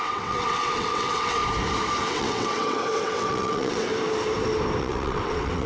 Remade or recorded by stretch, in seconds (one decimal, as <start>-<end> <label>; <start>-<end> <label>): 0.0-1.4 remade; 1.4-2.1 recorded; 2.1-3.9 remade; 3.9-4.8 recorded; 4.8-5.7 remade